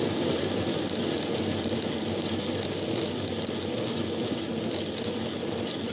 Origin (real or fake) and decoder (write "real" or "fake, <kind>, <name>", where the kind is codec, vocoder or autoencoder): real